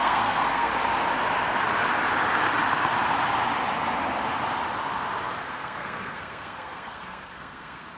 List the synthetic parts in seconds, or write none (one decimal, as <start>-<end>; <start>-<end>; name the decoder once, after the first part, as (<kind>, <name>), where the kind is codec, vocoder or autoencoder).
0.0-0.7 (codec, SNAC); 5.5-8.0